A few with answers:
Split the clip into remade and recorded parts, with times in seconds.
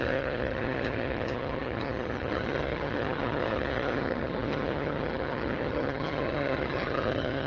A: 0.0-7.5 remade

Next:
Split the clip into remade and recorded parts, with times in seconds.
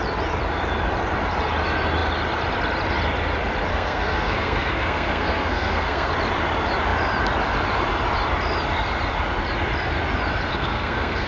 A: 0.0-3.7 recorded; 3.7-6.1 remade; 6.1-10.5 recorded; 10.5-11.3 remade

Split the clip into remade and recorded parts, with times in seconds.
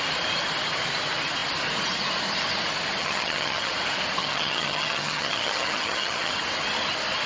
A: 0.0-3.0 recorded; 3.0-3.7 remade; 3.7-4.2 recorded; 4.2-6.3 remade; 6.3-7.3 recorded